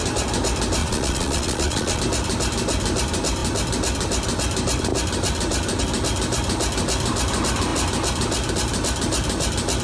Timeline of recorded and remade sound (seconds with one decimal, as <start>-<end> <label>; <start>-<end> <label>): 0.0-0.8 recorded; 0.8-2.0 remade; 2.0-9.8 recorded